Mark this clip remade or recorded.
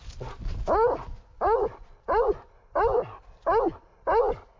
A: recorded